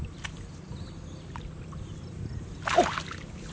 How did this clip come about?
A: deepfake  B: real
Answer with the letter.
B